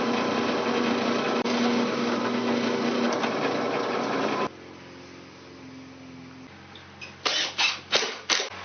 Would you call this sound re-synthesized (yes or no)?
no